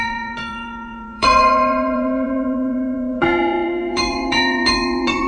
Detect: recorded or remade remade